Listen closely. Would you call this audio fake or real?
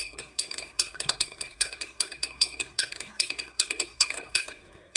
fake